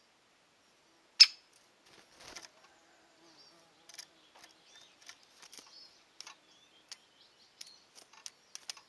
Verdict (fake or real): real